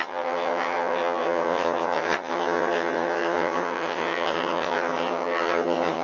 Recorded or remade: remade